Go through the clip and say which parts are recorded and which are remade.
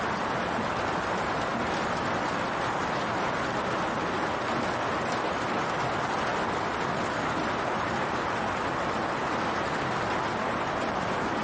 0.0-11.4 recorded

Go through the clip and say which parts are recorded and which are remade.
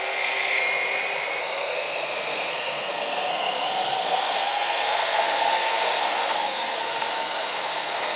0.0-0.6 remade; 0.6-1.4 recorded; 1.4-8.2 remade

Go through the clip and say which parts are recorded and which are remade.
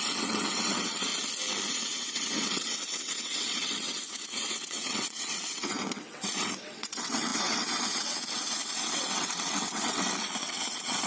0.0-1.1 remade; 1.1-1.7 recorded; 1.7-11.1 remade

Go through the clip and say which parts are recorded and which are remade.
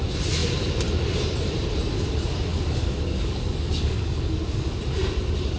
0.0-2.5 recorded; 2.5-4.8 remade; 4.8-5.6 recorded